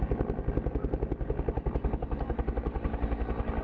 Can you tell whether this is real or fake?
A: real